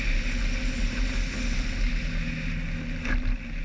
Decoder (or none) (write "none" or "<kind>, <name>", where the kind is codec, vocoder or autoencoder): none